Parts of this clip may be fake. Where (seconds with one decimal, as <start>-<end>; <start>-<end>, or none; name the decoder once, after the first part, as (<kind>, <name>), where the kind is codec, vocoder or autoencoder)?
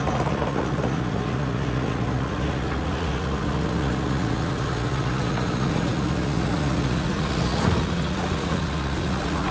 0.0-9.5 (vocoder, Vocos)